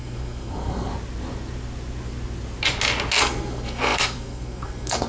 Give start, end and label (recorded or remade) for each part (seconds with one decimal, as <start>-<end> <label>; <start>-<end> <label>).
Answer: 0.0-0.9 remade; 0.9-3.2 recorded; 3.2-5.1 remade

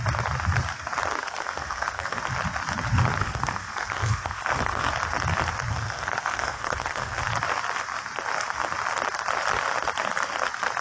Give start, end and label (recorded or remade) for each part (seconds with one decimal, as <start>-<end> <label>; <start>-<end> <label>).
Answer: 0.0-1.2 recorded; 1.2-2.2 remade; 2.2-3.2 recorded; 3.2-4.9 remade; 4.9-5.7 recorded; 5.7-7.2 remade; 7.2-10.8 recorded